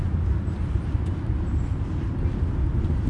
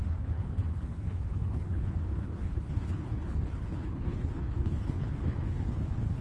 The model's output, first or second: second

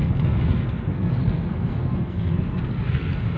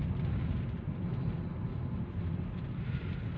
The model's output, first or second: first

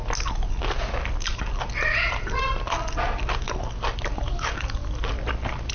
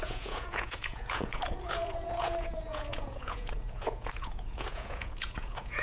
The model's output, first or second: second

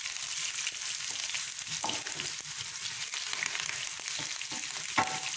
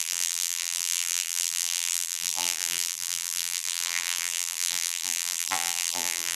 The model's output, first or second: second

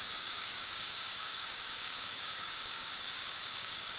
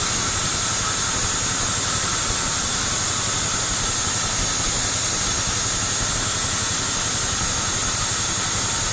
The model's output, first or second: first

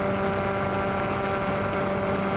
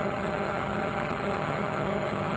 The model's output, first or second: second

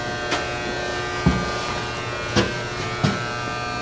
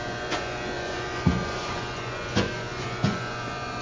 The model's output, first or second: second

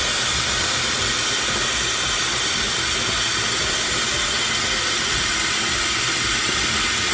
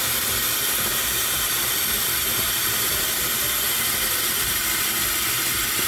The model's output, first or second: second